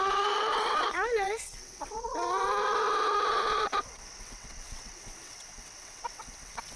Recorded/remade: remade